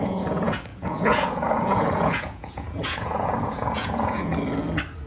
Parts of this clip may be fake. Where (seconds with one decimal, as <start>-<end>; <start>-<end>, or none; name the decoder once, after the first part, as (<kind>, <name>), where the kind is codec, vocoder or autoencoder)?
0.0-4.3 (vocoder, Vocos)